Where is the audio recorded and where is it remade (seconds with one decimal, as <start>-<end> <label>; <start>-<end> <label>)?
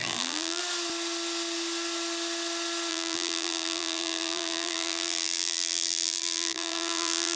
0.0-0.6 remade; 0.6-2.9 recorded; 2.9-7.4 remade